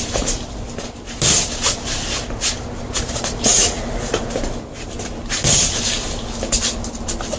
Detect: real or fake real